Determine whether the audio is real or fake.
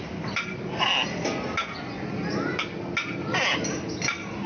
real